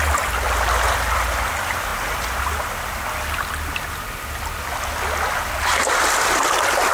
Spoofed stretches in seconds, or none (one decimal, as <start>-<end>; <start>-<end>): 0.0-1.9; 6.0-6.9